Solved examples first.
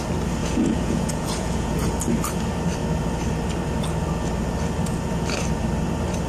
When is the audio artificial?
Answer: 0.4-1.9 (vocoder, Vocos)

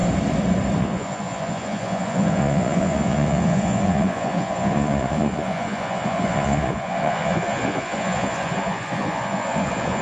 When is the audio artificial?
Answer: 0.8-10.0 (vocoder, Vocos)

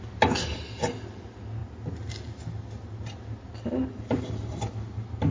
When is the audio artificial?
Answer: none